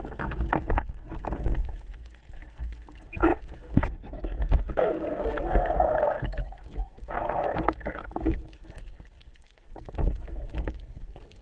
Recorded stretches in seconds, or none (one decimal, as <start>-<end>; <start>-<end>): none